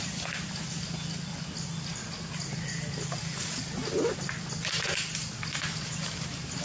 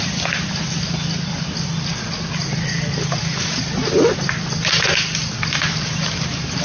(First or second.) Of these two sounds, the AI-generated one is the second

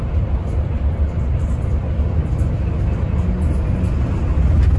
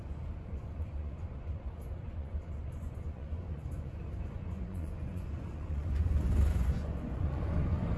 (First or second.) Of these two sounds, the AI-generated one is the second